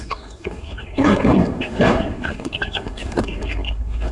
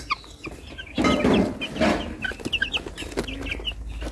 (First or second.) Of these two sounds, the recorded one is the second